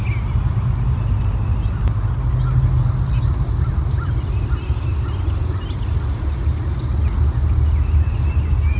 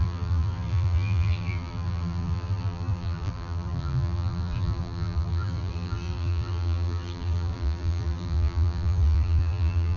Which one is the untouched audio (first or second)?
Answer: first